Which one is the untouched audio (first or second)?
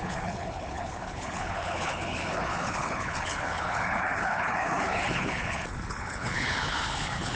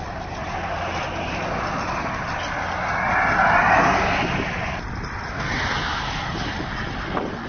second